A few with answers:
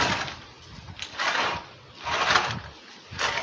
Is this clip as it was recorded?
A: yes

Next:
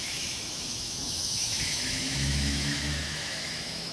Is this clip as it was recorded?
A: no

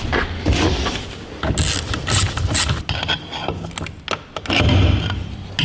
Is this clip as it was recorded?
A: yes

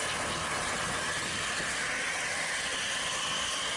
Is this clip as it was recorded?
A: yes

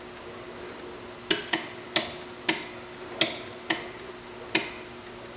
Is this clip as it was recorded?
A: yes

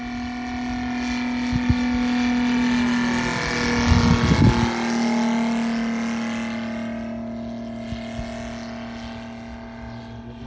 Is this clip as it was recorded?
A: yes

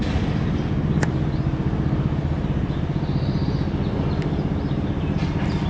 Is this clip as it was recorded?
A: yes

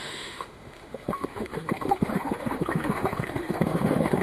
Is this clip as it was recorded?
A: no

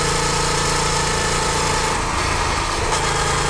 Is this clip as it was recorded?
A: yes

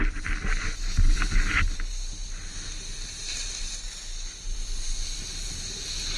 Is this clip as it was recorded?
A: yes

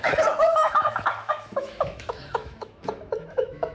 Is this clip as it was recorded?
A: no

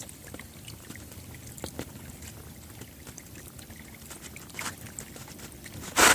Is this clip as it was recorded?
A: yes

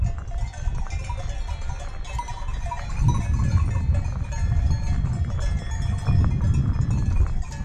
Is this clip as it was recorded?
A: yes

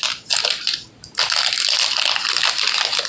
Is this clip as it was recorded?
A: yes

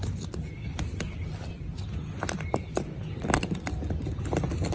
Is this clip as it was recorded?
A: yes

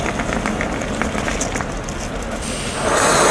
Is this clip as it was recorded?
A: yes